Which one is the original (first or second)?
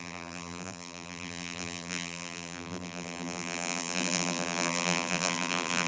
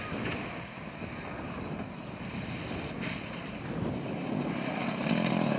second